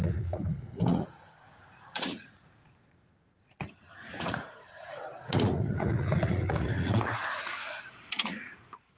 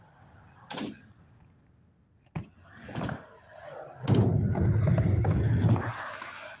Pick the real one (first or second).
second